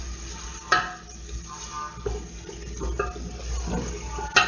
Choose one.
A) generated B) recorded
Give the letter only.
B